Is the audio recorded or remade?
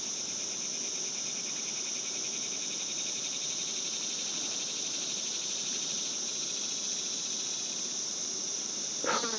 recorded